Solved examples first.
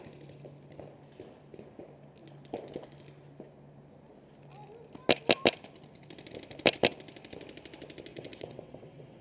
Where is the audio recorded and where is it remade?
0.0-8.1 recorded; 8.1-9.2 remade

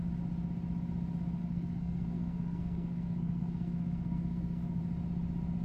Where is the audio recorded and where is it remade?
0.0-1.4 recorded; 1.4-4.8 remade; 4.8-5.6 recorded

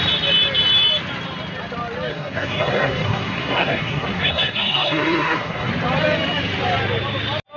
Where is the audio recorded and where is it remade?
0.0-2.1 recorded; 2.1-5.7 remade; 5.7-7.6 recorded

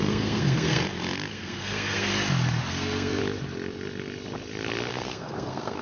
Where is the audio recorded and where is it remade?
0.0-0.8 remade; 0.8-1.3 recorded; 1.3-2.1 remade; 2.1-2.7 recorded; 2.7-3.2 remade; 3.2-4.9 recorded; 4.9-5.8 remade

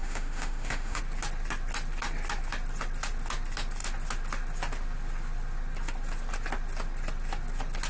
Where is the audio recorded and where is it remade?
0.0-1.0 remade; 1.0-7.9 recorded

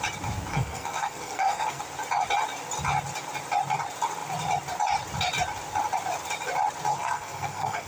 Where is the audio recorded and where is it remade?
0.0-0.5 recorded; 0.5-1.8 remade; 1.8-6.9 recorded; 6.9-7.9 remade

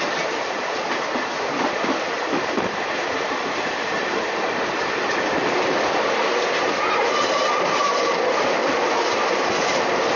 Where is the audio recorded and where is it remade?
0.0-10.2 recorded

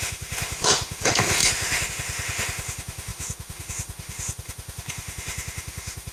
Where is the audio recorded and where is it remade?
0.0-6.1 remade